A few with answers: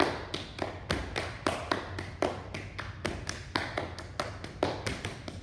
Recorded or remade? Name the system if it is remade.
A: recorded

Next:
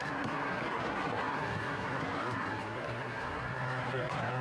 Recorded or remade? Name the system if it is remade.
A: remade, codec, SNAC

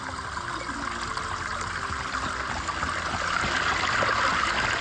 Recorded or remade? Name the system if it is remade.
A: recorded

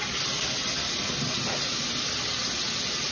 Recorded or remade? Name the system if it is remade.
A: recorded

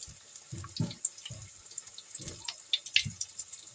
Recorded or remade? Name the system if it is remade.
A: recorded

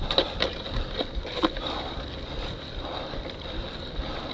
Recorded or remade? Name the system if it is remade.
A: recorded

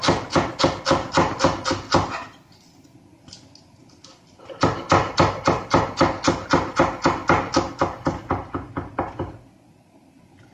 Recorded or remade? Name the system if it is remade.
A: recorded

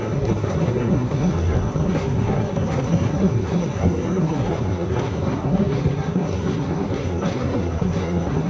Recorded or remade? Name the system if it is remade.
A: remade, codec, SNAC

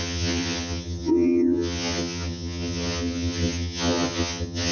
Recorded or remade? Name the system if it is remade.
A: remade, vocoder, HiFi-GAN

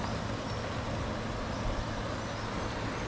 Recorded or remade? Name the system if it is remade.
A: recorded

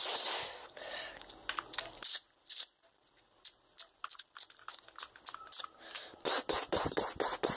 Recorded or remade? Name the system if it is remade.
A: recorded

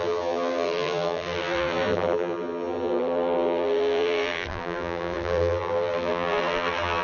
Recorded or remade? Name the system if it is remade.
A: remade, vocoder, BigVGAN v2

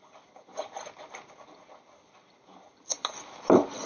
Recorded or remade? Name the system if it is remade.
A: recorded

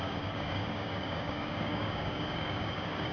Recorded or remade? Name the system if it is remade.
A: remade, codec, DAC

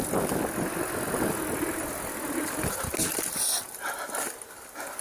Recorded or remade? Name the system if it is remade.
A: recorded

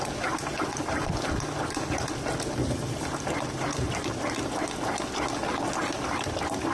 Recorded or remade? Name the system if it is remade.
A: recorded